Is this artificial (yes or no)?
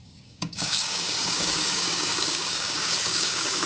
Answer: yes